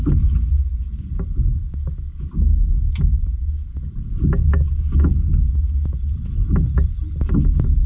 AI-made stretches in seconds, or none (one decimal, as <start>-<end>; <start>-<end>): none